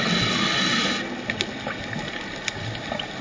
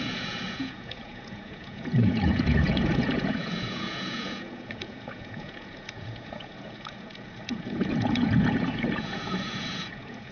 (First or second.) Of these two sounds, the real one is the first